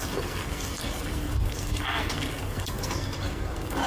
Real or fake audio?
fake